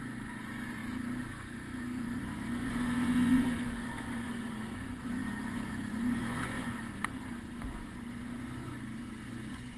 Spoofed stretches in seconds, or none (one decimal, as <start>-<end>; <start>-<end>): 0.0-0.8; 1.3-9.8